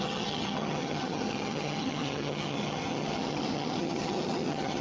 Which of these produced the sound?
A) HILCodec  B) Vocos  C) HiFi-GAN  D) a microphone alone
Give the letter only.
C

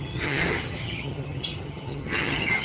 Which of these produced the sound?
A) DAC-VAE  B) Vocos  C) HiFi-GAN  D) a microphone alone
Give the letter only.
C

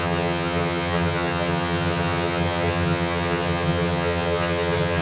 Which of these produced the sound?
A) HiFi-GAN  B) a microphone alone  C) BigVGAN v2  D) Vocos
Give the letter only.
A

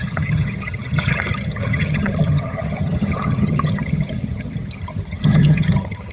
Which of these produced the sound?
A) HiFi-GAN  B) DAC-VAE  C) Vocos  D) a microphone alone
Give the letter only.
A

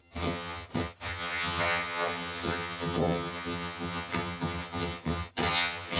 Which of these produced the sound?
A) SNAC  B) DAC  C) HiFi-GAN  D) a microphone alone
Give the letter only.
C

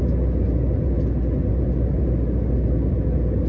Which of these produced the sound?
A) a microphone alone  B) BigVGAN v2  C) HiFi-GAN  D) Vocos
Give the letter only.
A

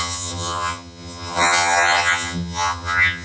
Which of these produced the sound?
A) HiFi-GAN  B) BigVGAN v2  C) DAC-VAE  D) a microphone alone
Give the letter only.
A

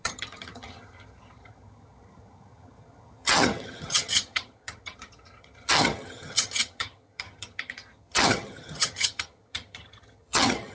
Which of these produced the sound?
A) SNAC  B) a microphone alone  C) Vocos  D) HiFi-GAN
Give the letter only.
D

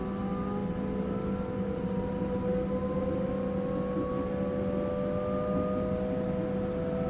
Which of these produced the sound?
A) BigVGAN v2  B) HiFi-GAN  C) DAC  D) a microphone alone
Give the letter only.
D